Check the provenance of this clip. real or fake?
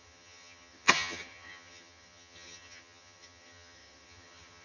fake